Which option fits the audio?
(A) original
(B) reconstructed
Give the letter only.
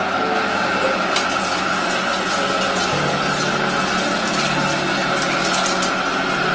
A